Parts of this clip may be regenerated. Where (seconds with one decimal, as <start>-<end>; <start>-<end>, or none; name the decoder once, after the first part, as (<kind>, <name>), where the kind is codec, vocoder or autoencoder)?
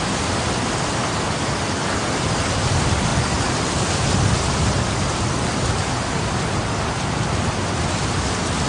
none